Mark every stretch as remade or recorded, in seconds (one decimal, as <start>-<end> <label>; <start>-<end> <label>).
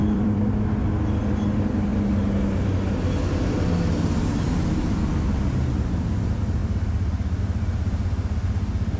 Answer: 0.0-0.6 remade; 0.6-9.0 recorded